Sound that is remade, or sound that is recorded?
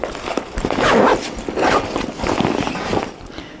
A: recorded